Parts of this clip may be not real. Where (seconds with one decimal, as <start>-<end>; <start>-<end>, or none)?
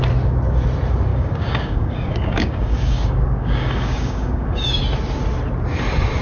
1.1-4.8